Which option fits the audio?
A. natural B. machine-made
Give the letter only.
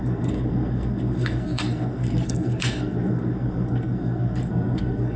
B